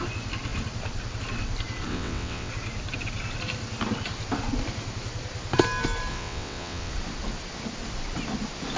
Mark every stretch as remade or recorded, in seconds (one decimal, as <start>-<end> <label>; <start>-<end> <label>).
0.0-1.9 recorded; 1.9-2.5 remade; 2.5-6.1 recorded; 6.1-6.9 remade; 6.9-8.8 recorded